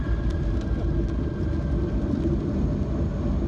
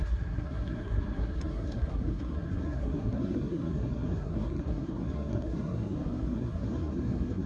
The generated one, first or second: second